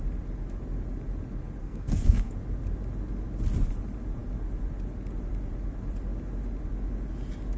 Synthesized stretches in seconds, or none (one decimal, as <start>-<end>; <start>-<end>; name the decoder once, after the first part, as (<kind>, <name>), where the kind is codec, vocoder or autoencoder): 1.6-2.3 (codec, SNAC)